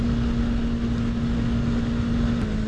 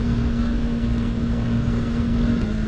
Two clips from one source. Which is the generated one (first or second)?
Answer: second